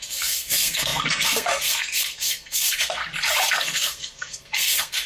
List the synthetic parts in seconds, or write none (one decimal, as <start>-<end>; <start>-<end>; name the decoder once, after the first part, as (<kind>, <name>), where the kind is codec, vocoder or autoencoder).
0.0-3.0 (codec, SNAC); 3.5-5.1

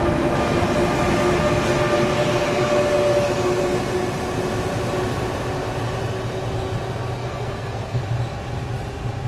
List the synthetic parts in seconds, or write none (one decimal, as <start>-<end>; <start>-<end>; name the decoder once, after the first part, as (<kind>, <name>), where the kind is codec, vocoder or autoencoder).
7.2-8.0 (codec, SNAC)

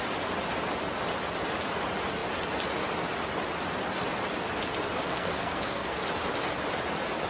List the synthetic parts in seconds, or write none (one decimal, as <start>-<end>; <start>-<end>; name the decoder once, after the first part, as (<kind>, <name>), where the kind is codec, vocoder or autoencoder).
5.0-6.0 (codec, SNAC)